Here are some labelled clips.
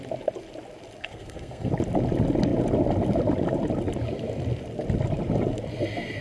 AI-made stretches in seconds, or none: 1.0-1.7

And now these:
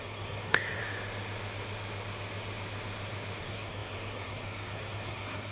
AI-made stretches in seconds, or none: 0.0-0.8; 3.4-5.5